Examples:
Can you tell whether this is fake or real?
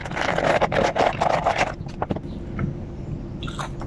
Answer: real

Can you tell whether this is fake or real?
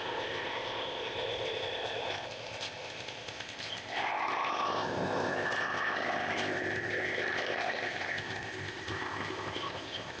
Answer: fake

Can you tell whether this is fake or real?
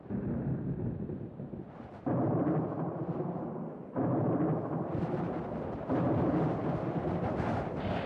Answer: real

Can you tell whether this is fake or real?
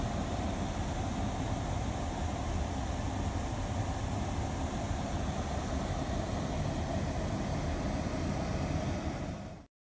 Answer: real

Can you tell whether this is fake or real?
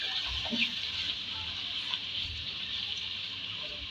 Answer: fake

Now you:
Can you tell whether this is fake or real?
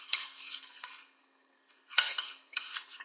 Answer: fake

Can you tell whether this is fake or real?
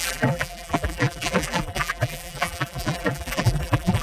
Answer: fake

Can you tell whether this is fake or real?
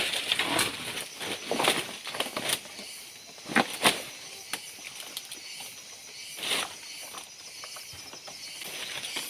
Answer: real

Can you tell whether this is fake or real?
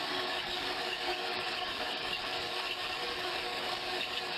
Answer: fake